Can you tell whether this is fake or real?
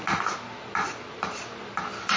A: real